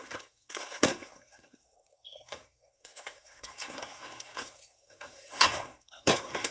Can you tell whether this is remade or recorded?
remade